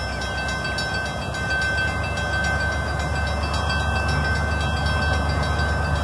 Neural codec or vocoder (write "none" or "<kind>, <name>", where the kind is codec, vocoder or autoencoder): none